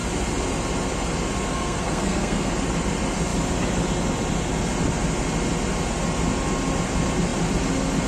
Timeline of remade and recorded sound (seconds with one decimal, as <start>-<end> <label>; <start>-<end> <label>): 0.0-1.5 recorded; 1.5-2.5 remade; 2.5-8.1 recorded